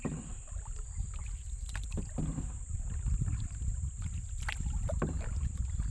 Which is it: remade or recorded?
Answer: recorded